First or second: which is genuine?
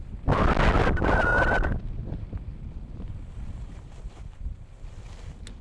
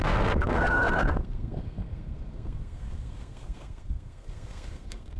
first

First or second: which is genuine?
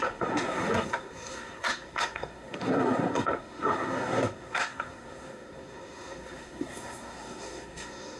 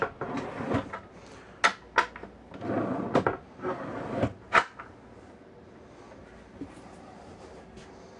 second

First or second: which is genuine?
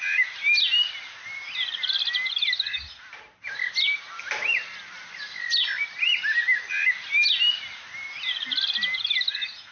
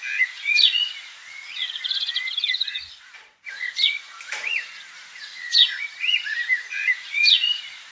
first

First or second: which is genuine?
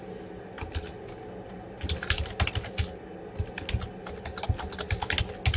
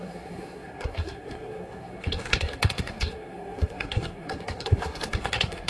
first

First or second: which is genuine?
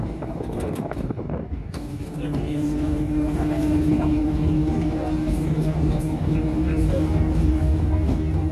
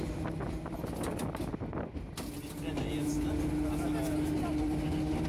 second